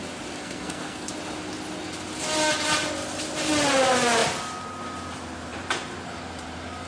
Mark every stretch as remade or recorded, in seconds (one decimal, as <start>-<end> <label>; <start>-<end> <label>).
0.0-0.4 recorded; 0.4-1.1 remade; 1.1-6.9 recorded